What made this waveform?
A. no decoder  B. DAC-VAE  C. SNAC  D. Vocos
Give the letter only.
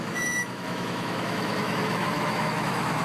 B